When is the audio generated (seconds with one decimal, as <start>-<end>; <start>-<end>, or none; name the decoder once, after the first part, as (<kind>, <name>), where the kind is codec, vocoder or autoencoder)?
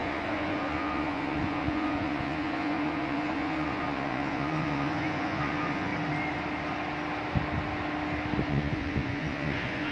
0.0-5.9 (vocoder, Vocos); 8.5-9.9